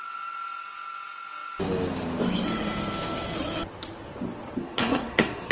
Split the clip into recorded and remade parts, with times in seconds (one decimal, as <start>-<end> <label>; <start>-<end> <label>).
0.0-4.6 recorded; 4.6-5.5 remade